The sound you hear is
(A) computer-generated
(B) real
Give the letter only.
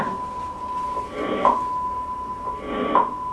B